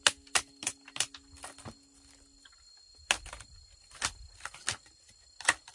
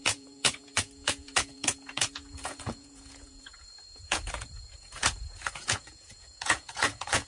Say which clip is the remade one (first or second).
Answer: second